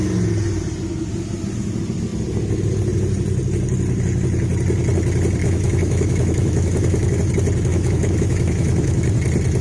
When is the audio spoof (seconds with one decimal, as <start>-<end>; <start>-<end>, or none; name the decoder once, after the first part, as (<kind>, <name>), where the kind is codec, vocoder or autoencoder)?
5.4-7.2 (autoencoder, DAC-VAE); 7.7-9.1